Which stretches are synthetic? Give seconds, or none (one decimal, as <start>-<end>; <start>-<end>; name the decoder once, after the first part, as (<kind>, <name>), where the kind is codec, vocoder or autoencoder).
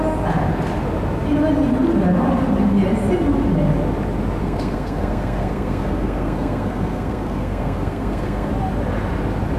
4.4-8.5 (codec, SNAC)